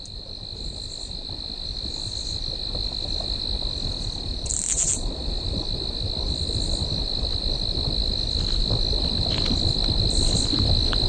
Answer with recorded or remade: recorded